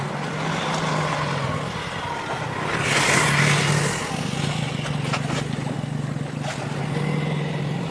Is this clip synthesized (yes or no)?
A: no